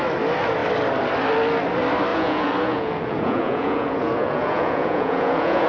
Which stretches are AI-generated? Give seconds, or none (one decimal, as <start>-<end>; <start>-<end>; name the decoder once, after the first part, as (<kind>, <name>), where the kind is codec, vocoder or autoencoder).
2.1-5.7 (vocoder, Vocos)

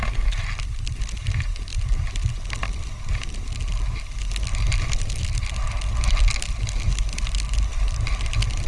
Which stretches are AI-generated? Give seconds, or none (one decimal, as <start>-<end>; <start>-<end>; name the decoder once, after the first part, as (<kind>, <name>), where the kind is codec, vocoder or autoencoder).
none

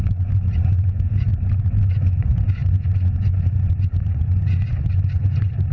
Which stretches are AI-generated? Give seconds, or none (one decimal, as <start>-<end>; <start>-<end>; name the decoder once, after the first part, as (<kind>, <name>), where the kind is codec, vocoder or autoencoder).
0.0-1.3 (vocoder, Vocos); 1.9-5.7

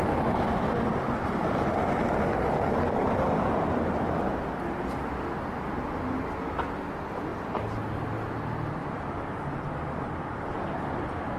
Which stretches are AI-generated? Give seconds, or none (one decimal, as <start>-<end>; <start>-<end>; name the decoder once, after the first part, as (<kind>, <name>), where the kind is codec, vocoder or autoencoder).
none